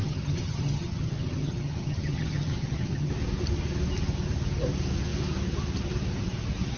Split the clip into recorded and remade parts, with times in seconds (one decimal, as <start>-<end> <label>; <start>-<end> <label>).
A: 0.0-3.1 remade; 3.1-6.8 recorded